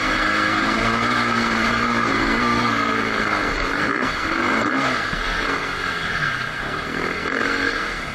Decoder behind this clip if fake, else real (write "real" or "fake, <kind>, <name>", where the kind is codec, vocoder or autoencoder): fake, codec, SNAC